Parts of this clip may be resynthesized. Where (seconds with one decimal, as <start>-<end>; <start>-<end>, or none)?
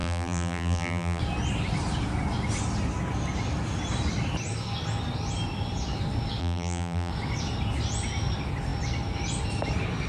0.0-1.2; 6.4-7.1